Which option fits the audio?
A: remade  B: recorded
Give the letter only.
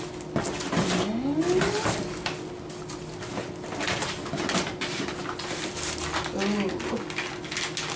B